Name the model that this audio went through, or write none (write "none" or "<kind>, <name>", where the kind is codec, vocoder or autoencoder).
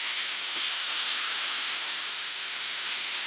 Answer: autoencoder, DAC-VAE